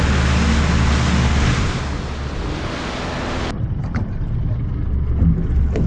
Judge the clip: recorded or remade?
recorded